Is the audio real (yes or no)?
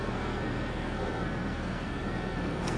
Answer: no